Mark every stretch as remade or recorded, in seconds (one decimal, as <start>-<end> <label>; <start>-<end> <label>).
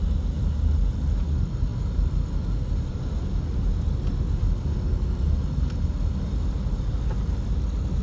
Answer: 0.0-8.0 recorded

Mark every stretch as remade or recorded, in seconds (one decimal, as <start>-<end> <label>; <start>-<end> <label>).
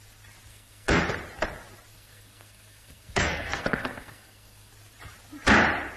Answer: 0.0-0.5 recorded; 0.5-1.0 remade; 1.0-1.9 recorded; 1.9-4.7 remade; 4.7-6.0 recorded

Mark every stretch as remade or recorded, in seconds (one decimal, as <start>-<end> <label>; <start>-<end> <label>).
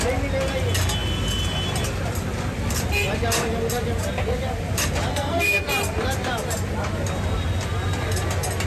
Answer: 0.0-5.1 recorded; 5.1-5.6 remade; 5.6-8.7 recorded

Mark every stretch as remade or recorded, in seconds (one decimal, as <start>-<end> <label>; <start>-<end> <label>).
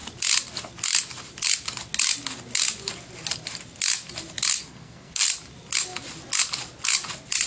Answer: 0.0-4.6 recorded; 4.6-5.2 remade; 5.2-7.5 recorded